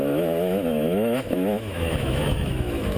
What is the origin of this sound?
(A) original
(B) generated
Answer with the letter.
B